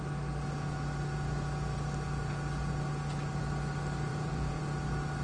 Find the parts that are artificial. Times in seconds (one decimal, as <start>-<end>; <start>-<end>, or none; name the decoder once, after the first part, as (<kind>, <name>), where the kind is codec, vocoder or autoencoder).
4.1-4.6 (vocoder, Vocos)